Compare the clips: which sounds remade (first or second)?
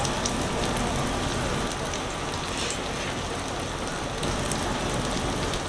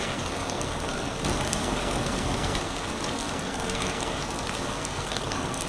second